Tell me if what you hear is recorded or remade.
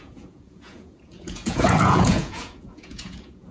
remade